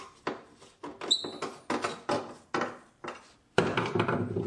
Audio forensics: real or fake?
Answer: real